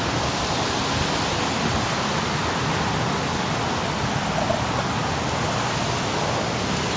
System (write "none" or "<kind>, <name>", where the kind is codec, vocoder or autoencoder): none